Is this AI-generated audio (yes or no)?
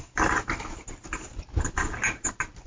no